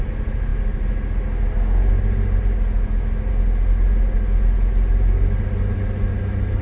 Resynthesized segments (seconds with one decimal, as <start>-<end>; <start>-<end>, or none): none